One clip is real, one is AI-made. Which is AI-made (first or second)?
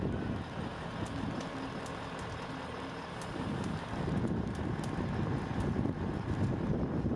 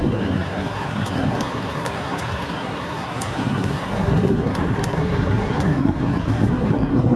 second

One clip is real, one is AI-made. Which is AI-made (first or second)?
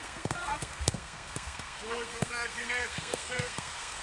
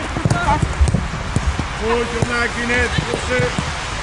first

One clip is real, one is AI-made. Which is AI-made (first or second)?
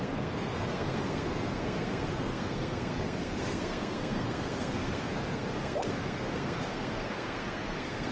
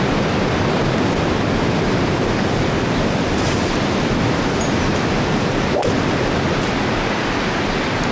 first